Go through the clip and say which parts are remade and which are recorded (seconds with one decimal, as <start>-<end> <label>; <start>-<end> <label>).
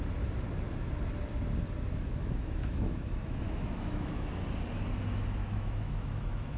0.0-2.1 recorded; 2.1-4.4 remade; 4.4-5.4 recorded; 5.4-6.6 remade